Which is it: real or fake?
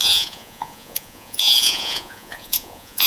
fake